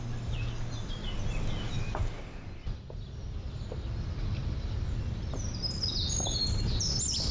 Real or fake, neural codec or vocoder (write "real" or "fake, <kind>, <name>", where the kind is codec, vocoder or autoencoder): real